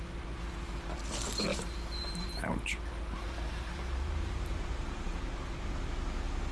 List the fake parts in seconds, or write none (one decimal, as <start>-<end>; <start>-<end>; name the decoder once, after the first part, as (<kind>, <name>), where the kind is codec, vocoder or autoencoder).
1.5-5.4 (vocoder, BigVGAN v2)